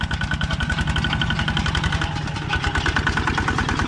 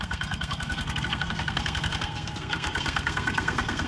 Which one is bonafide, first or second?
first